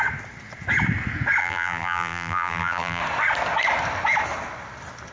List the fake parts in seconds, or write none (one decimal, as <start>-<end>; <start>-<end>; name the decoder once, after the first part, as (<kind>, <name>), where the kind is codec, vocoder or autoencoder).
1.4-3.0 (vocoder, BigVGAN v2)